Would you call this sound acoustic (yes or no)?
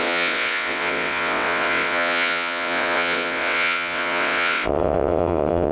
no